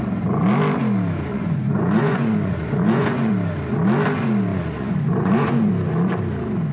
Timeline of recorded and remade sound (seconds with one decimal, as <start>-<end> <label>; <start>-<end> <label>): 0.0-1.3 recorded; 1.3-3.3 remade; 3.3-4.5 recorded; 4.5-5.7 remade; 5.7-6.7 recorded